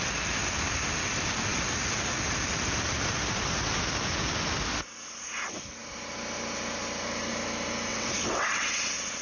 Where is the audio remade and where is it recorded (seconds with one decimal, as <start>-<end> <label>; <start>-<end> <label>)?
0.0-7.9 recorded; 7.9-9.2 remade